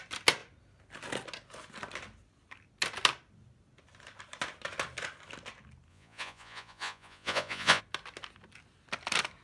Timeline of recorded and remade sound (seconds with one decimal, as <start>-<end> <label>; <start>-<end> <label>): 0.0-5.9 recorded; 5.9-7.8 remade; 7.8-9.4 recorded